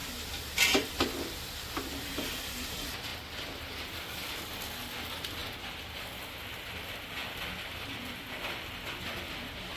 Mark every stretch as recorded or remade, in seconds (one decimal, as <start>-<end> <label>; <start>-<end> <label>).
0.0-9.8 recorded